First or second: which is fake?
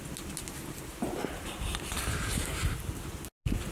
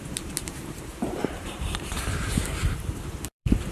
second